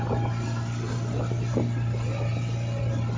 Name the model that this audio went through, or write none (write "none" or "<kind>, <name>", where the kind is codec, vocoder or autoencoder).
none